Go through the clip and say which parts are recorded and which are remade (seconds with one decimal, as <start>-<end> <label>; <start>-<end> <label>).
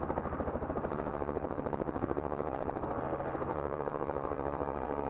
0.0-0.9 recorded; 0.9-2.8 remade; 2.8-3.5 recorded; 3.5-5.1 remade